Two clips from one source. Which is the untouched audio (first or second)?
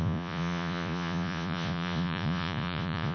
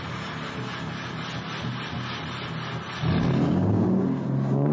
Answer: second